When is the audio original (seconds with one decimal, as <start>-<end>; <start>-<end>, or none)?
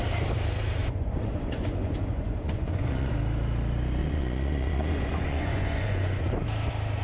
0.0-0.8; 3.1-4.0; 6.3-7.0